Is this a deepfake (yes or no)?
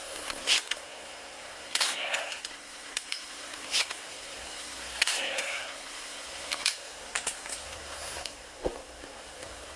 yes